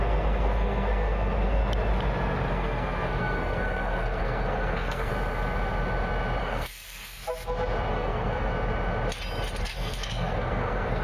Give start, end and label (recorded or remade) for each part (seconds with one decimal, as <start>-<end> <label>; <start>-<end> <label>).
0.0-1.6 remade; 1.6-2.5 recorded; 2.5-5.1 remade; 5.1-6.4 recorded; 6.4-7.2 remade; 7.2-7.9 recorded; 7.9-8.5 remade; 8.5-9.6 recorded; 9.6-11.0 remade